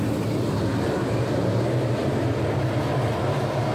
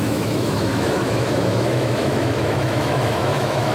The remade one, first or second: second